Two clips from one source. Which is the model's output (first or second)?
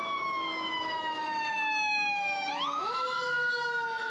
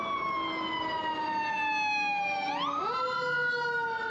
first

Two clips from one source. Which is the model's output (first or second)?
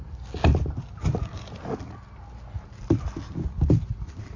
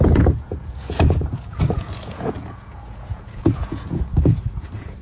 second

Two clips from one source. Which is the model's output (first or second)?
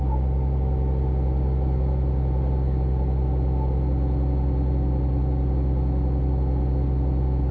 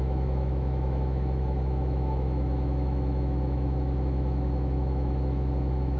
second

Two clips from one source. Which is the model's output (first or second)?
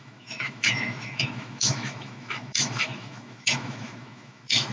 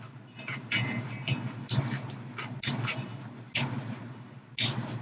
first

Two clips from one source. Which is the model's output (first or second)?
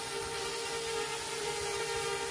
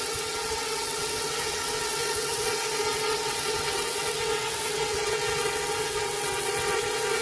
second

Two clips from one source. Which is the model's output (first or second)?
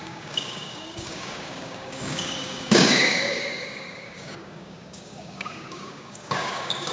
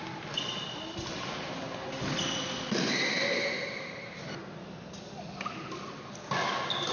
first